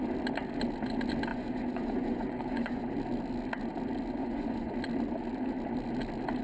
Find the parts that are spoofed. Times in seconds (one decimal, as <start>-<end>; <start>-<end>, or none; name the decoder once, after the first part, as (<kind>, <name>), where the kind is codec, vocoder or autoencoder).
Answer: 1.3-2.9 (vocoder, Vocos); 4.2-4.7